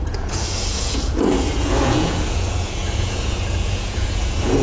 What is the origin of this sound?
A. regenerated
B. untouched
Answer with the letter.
A